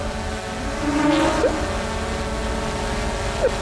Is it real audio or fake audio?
real